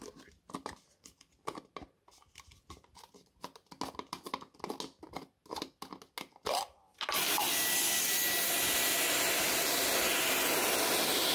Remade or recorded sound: recorded